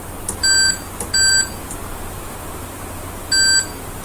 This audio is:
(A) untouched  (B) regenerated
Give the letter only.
A